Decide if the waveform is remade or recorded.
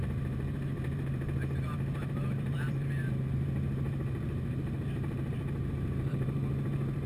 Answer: remade